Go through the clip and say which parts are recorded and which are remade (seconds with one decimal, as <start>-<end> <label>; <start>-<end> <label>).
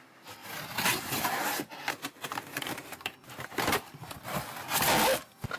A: 0.0-0.4 recorded; 0.4-3.8 remade; 3.8-5.6 recorded